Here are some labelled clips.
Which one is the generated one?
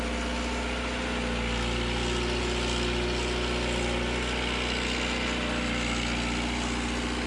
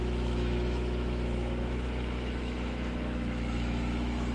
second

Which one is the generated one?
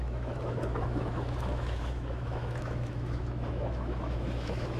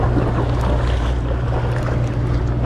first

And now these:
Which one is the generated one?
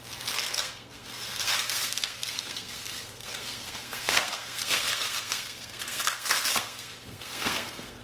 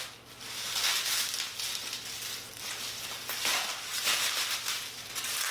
first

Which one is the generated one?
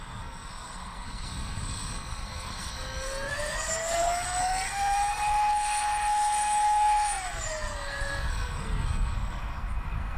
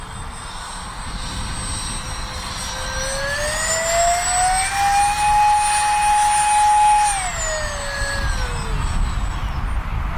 first